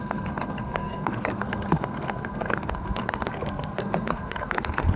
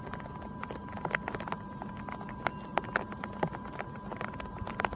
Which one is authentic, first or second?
second